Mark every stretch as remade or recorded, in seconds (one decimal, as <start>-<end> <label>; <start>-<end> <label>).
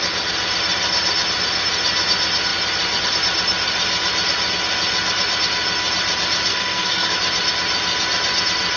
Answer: 0.0-6.5 recorded; 6.5-7.1 remade; 7.1-8.8 recorded